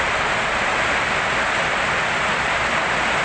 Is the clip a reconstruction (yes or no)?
no